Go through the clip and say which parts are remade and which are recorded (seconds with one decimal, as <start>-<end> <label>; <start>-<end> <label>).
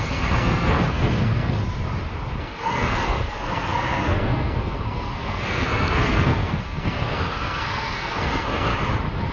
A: 0.0-1.6 remade; 1.6-2.4 recorded; 2.4-8.7 remade; 8.7-9.3 recorded